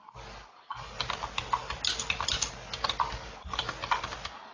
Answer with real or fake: real